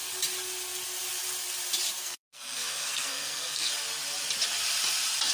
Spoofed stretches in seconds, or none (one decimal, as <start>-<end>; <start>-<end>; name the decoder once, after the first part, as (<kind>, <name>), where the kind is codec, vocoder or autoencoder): 2.0-3.7 (codec, SNAC)